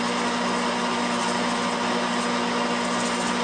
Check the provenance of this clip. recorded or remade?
recorded